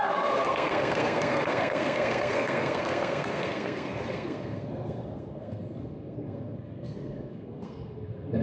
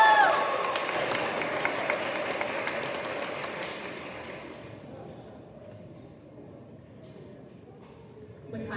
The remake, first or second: first